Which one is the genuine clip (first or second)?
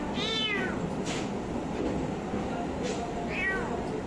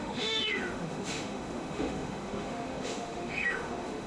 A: first